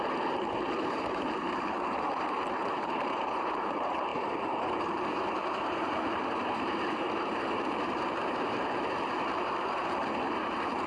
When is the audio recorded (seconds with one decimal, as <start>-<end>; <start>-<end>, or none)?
none